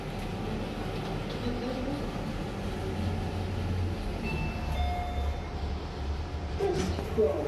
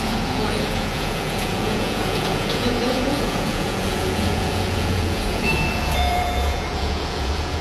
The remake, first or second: second